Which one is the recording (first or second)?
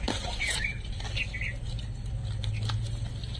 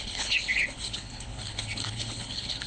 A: first